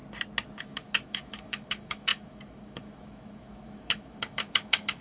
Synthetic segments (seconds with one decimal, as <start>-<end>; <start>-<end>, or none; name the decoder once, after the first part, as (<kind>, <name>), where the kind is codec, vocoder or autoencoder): 0.6-5.0 (autoencoder, DAC-VAE)